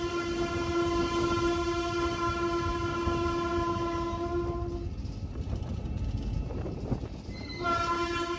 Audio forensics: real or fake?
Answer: real